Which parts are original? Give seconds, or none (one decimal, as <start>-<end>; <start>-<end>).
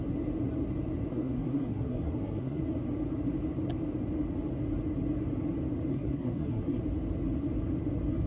0.0-1.1; 2.6-5.9; 6.8-8.3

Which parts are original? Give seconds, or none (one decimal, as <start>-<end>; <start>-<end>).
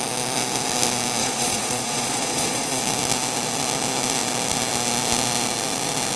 0.0-1.2; 2.8-6.2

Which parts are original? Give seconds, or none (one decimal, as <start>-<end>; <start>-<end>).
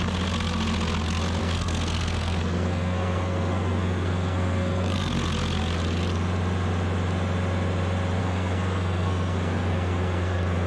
0.0-1.4; 5.1-8.2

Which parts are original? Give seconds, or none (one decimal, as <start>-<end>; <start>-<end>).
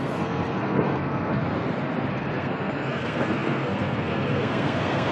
1.4-2.1